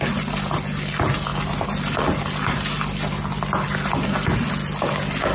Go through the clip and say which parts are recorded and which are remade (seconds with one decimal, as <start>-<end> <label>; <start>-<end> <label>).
0.0-5.3 recorded